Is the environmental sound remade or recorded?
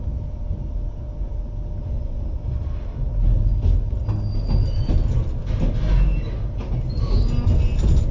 recorded